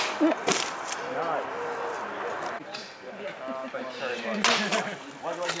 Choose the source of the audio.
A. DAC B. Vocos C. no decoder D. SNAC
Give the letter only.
C